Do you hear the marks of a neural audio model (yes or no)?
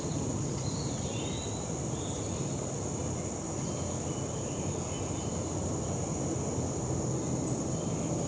no